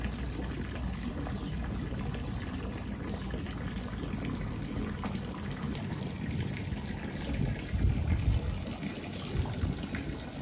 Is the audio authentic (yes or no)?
yes